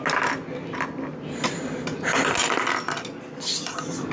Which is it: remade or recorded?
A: recorded